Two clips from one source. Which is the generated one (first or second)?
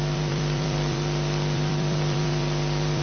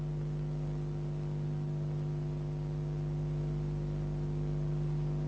first